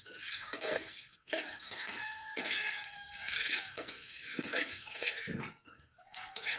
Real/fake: fake